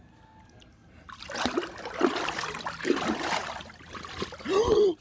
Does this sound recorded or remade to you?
recorded